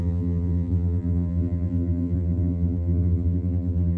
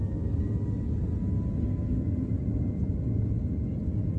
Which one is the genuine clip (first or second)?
second